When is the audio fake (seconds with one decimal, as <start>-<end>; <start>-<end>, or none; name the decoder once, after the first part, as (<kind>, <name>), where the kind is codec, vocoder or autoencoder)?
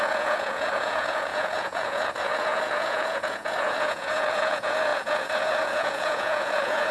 0.0-6.9 (vocoder, Vocos)